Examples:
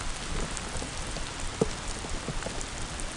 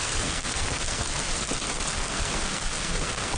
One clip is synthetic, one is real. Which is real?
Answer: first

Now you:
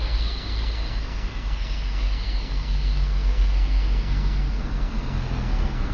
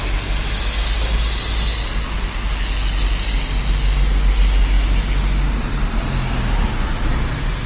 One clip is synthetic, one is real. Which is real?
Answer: second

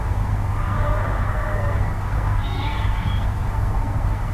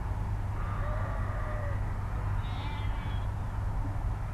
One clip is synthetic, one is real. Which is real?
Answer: second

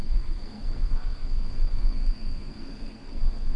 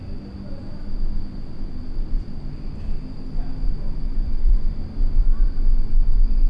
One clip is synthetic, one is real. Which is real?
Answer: second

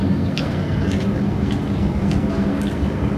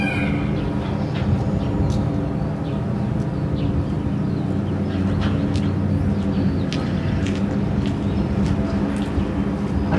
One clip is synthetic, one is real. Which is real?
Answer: second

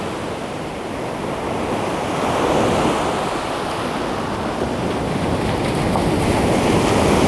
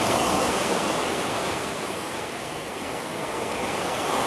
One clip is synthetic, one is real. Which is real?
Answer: first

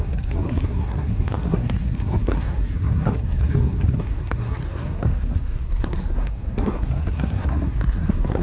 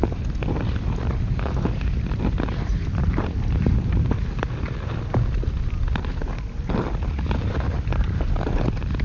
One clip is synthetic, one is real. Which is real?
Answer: second